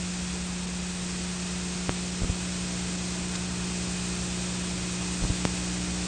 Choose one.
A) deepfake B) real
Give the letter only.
B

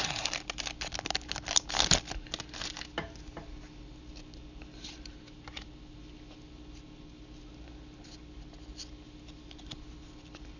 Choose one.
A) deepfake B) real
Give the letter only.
B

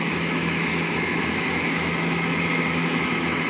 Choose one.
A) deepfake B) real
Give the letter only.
A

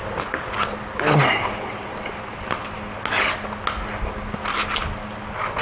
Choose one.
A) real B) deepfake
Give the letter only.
A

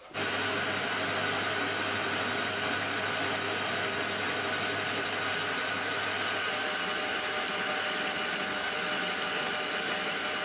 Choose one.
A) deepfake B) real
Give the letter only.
B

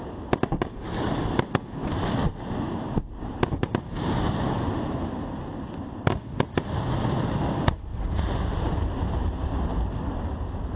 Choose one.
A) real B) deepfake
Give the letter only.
A